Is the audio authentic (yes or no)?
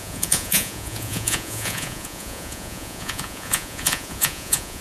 no